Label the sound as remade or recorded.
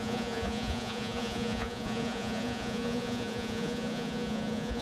remade